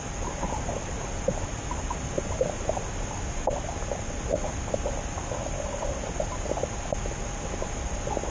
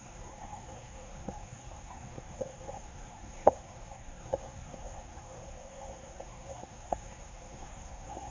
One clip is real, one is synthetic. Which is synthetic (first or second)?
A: second